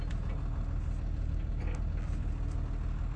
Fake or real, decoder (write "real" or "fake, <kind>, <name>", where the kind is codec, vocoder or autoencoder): real